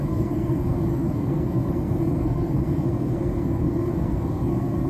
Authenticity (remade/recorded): remade